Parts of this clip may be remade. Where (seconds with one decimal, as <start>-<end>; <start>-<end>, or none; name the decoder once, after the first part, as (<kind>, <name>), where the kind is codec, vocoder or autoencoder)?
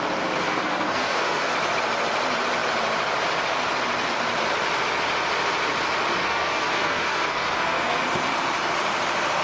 0.5-1.5 (codec, SNAC); 6.2-8.0